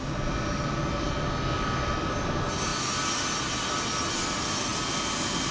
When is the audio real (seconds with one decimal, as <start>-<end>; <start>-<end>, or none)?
0.0-5.5